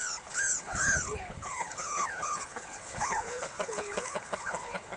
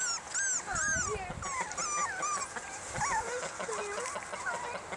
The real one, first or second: second